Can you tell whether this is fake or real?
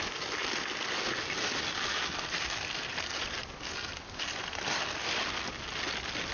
real